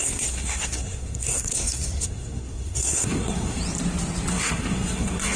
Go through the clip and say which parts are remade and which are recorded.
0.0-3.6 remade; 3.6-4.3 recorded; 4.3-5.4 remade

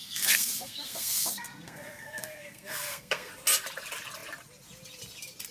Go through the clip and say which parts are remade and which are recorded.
0.0-3.3 remade; 3.3-5.5 recorded

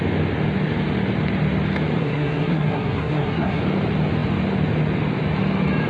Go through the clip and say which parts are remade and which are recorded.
0.0-2.0 recorded; 2.0-3.6 remade; 3.6-5.9 recorded

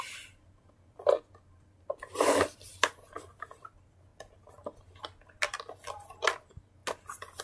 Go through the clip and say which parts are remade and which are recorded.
0.0-7.4 recorded

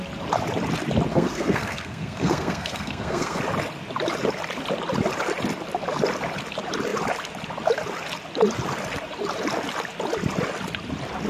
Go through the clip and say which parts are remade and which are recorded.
0.0-1.1 recorded; 1.1-3.4 remade; 3.4-11.3 recorded

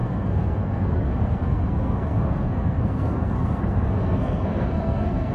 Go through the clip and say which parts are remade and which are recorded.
0.0-5.3 remade